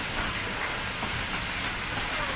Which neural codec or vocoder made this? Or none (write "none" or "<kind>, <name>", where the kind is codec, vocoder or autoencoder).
none